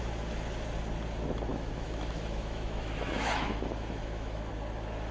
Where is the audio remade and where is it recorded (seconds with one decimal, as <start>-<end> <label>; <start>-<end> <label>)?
0.0-1.5 recorded; 1.5-4.5 remade; 4.5-5.1 recorded